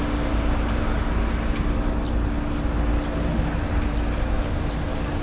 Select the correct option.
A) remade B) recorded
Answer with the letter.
B